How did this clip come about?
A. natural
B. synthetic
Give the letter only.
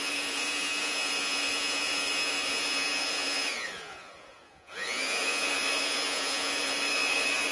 B